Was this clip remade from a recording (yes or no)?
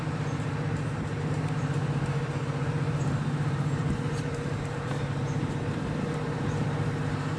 yes